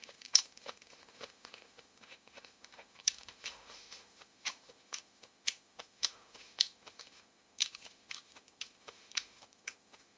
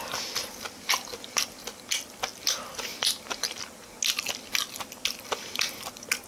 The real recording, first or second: second